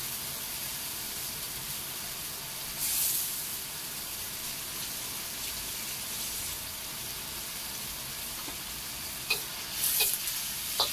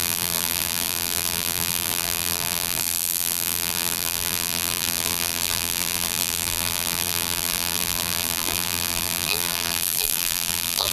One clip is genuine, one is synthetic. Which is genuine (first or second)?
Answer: first